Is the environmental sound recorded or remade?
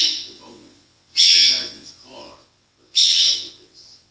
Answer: remade